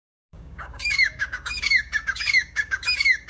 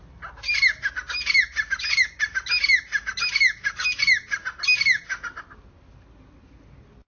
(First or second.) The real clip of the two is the second